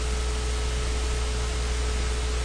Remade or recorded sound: recorded